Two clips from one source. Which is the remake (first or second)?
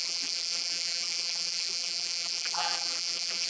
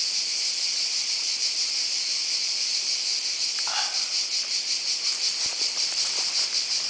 first